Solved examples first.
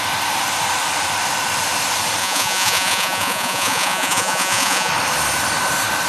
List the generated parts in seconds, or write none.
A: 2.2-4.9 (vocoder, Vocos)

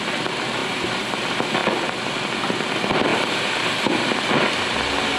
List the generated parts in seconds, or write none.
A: 0.6-1.1 (vocoder, BigVGAN v2); 3.1-4.3